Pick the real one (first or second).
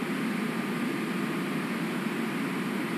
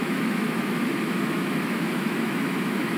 first